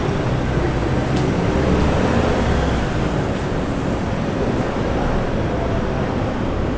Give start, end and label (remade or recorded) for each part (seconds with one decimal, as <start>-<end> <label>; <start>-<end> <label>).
0.0-6.8 recorded